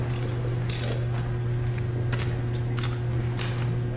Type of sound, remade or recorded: recorded